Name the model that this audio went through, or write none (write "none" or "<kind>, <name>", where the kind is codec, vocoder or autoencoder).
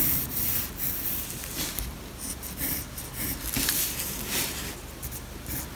none